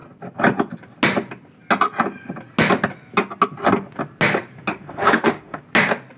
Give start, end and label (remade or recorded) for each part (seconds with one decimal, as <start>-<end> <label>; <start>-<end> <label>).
0.0-4.7 recorded; 4.7-5.6 remade; 5.6-6.2 recorded